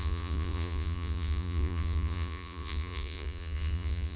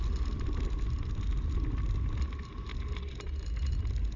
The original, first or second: second